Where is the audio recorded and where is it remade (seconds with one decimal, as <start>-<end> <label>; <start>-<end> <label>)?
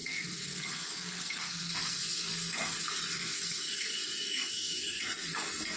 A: 0.0-5.8 remade